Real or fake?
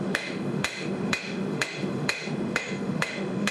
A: fake